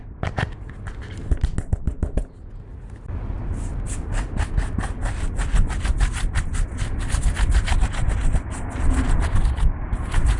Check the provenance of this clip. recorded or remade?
recorded